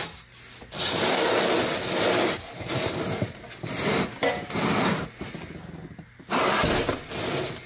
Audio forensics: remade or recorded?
recorded